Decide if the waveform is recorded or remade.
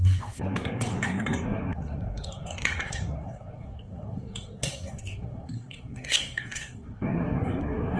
remade